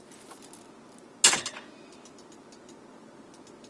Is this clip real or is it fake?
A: real